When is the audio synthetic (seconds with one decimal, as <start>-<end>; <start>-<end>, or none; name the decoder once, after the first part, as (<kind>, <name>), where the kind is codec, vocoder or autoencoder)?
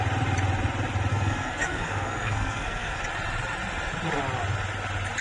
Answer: 1.1-3.0 (codec, SNAC)